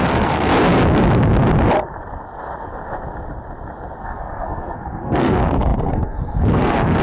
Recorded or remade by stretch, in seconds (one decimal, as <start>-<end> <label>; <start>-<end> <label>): 0.0-0.5 remade; 0.5-4.0 recorded; 4.0-7.0 remade